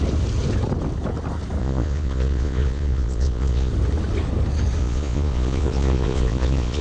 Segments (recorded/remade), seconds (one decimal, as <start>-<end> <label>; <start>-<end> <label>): 0.0-1.6 recorded; 1.6-3.7 remade; 3.7-4.8 recorded; 4.8-6.8 remade